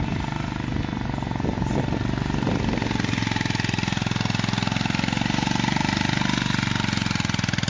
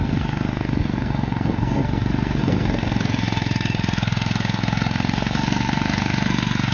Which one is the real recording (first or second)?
first